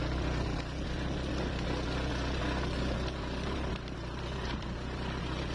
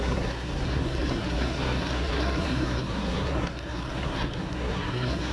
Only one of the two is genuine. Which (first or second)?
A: first